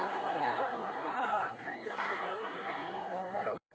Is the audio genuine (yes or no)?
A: no